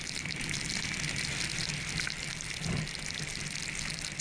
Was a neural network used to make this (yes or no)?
no